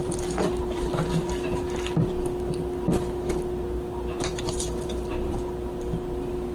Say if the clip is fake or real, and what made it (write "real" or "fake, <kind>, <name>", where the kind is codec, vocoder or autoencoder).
fake, vocoder, BigVGAN v2